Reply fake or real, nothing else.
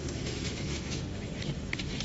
fake